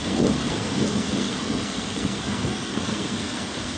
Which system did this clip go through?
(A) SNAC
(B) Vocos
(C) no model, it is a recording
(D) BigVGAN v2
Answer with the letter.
A